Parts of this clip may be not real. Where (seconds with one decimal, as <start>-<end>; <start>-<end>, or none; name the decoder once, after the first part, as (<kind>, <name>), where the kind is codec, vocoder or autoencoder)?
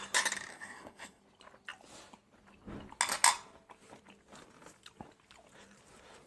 0.5-1.2 (codec, SNAC)